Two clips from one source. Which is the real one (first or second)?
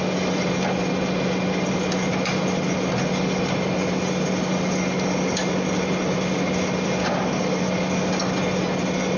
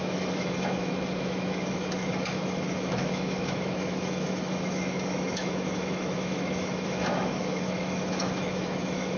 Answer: first